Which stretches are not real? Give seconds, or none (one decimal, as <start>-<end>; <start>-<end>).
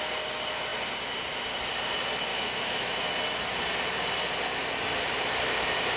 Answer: 2.3-3.1